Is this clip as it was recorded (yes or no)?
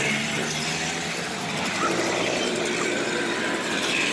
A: yes